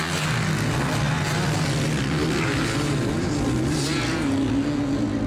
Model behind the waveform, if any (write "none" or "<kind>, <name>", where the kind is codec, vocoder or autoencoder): none